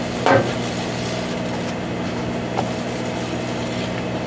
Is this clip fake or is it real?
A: real